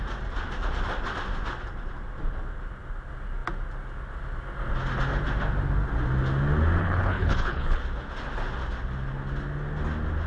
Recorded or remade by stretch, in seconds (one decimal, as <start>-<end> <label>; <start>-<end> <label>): 0.0-6.8 recorded; 6.8-7.8 remade; 7.8-10.3 recorded